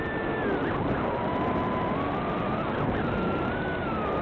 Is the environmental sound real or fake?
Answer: real